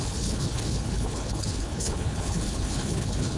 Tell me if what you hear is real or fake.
fake